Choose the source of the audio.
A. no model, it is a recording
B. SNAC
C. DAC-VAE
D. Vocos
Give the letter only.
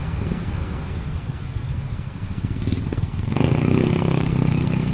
B